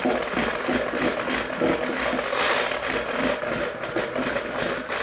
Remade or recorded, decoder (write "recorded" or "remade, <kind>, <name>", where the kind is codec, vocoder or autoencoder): recorded